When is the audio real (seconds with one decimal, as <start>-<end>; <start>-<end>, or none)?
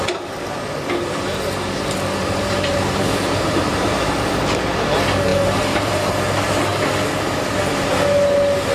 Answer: 0.0-2.2; 4.3-5.3; 6.1-8.7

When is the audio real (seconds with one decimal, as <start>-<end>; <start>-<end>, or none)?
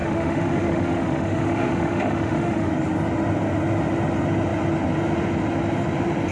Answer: 2.7-6.3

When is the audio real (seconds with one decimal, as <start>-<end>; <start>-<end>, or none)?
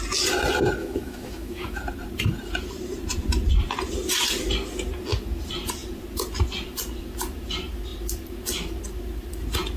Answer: 0.0-0.8; 1.8-9.8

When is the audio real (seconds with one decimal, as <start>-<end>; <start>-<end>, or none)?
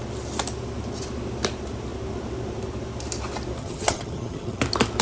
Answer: 0.0-3.6; 4.6-5.0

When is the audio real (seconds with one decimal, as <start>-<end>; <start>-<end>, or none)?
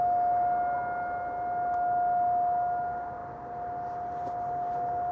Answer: 0.0-5.1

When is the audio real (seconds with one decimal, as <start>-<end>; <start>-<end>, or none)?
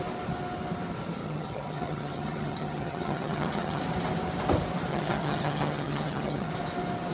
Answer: 0.0-1.2; 3.8-4.9; 6.5-7.1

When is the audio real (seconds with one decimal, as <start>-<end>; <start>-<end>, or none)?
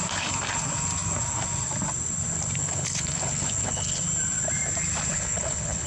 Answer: 0.0-2.6; 4.0-5.1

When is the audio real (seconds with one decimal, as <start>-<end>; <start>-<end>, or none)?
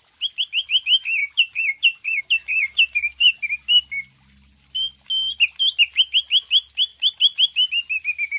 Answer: 0.0-1.2; 2.2-2.6; 3.4-8.4